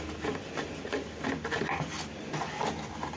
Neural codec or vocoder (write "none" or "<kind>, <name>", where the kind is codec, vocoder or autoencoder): none